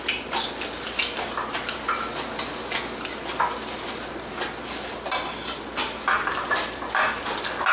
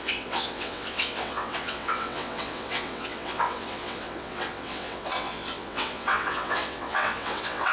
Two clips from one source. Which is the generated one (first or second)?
second